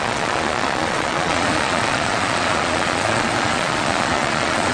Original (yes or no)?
no